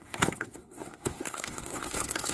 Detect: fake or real fake